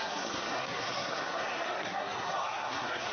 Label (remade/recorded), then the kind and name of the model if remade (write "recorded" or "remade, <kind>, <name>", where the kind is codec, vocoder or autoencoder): remade, codec, SNAC